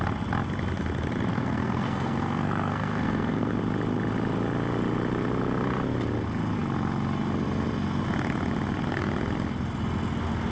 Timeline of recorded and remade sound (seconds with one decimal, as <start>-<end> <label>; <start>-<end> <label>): 0.0-1.3 recorded; 1.3-3.5 remade; 3.5-10.5 recorded